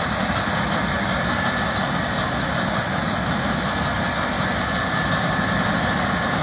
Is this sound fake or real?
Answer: real